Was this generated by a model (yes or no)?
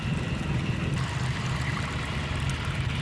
no